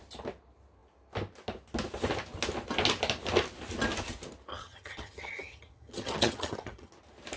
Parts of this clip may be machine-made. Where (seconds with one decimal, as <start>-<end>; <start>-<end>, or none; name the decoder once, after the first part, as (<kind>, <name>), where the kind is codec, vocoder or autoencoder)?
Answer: 4.5-6.9 (vocoder, HiFi-GAN)